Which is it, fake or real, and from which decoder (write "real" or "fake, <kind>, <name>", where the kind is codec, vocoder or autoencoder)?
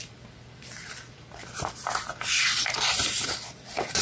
fake, vocoder, BigVGAN v2